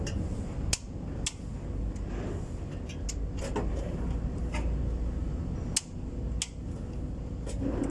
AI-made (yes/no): no